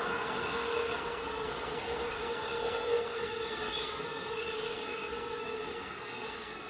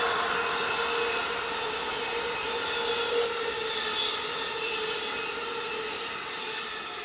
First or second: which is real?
second